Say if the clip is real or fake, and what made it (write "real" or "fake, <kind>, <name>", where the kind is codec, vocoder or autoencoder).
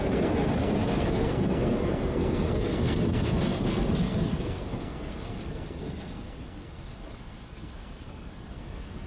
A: fake, codec, SNAC